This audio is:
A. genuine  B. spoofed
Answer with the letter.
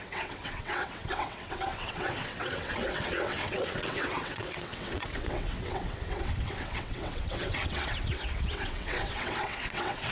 B